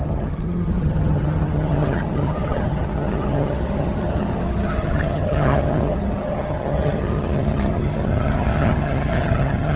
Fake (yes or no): yes